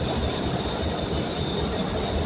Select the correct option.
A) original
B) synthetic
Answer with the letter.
B